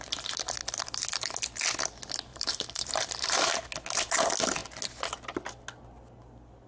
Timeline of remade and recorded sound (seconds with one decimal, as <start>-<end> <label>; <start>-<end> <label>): 0.0-2.3 recorded; 2.3-3.7 remade; 3.7-6.7 recorded